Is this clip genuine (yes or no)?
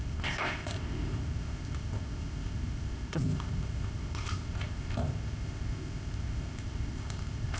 no